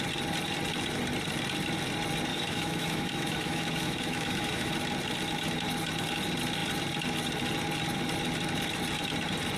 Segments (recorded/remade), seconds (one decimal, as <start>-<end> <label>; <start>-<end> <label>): 0.0-2.3 recorded; 2.3-4.7 remade; 4.7-9.6 recorded